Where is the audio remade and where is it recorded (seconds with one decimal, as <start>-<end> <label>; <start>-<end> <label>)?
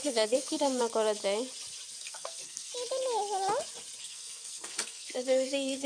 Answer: 0.0-0.8 remade; 0.8-2.0 recorded; 2.0-2.7 remade; 2.7-4.0 recorded; 4.0-5.9 remade